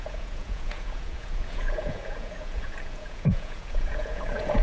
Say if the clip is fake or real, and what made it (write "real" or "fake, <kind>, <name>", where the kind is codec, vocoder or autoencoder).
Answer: fake, vocoder, Vocos